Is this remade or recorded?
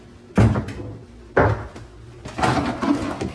recorded